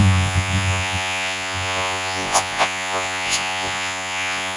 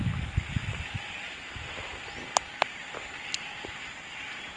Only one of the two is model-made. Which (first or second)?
first